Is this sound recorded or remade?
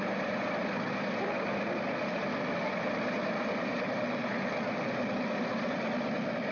recorded